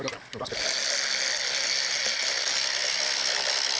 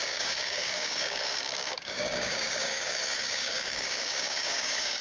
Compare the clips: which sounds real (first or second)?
first